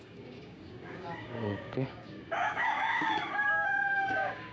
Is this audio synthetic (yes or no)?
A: yes